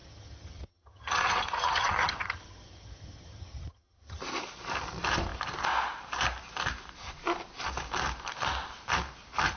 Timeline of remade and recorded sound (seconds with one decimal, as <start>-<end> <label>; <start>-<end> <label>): 0.0-4.2 remade; 4.2-9.6 recorded

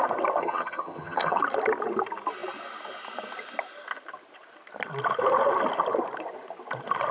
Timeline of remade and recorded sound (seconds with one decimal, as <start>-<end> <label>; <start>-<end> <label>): 0.0-0.4 recorded; 0.4-1.4 remade; 1.4-7.1 recorded